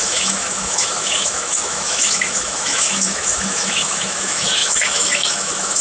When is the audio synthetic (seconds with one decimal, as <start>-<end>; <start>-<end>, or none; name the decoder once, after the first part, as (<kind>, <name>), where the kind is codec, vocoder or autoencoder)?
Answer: 0.0-5.8 (autoencoder, DAC-VAE)